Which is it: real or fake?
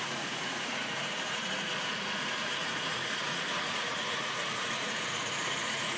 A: fake